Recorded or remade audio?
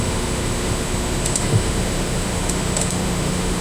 remade